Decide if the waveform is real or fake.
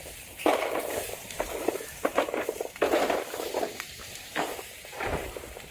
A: fake